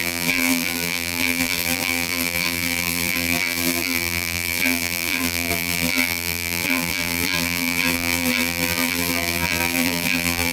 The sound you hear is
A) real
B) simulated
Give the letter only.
B